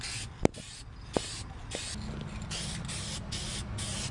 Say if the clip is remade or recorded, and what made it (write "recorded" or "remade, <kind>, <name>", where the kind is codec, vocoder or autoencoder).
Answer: recorded